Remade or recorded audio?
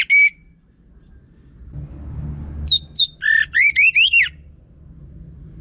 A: recorded